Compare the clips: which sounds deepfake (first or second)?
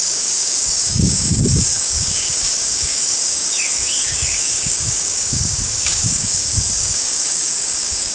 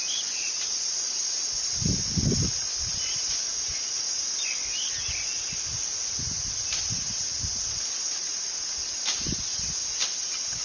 first